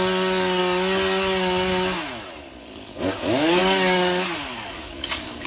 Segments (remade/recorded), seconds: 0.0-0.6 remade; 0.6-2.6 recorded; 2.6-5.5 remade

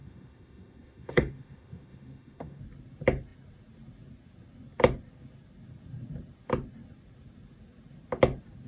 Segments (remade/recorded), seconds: 0.0-2.6 remade; 2.6-8.7 recorded

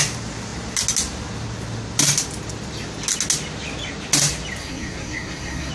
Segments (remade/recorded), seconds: 0.0-4.6 recorded; 4.6-5.7 remade

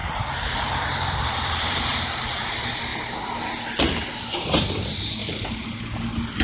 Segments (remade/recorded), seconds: 0.0-2.9 remade; 2.9-4.2 recorded; 4.2-5.2 remade; 5.2-6.4 recorded

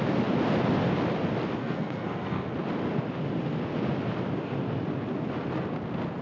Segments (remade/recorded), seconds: 0.0-1.6 recorded; 1.6-2.5 remade; 2.5-6.2 recorded

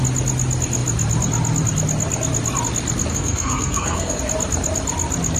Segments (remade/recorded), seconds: 0.0-3.1 recorded; 3.1-4.2 remade; 4.2-5.4 recorded

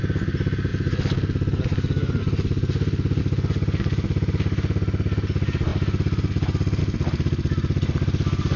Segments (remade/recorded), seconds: 0.0-8.6 recorded

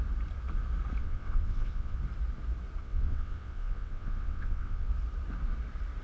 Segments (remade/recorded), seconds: 0.0-1.0 recorded; 1.0-2.0 remade; 2.0-2.8 recorded; 2.8-4.9 remade; 4.9-6.0 recorded